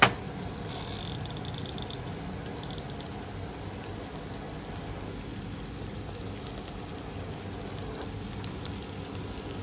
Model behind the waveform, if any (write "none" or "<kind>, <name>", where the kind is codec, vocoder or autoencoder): none